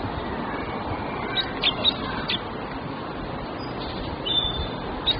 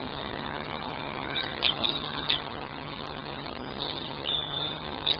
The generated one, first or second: second